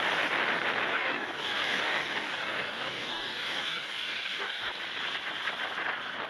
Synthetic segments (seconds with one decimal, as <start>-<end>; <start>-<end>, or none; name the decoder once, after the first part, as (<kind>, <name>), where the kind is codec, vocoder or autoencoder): 0.9-4.7 (codec, DAC)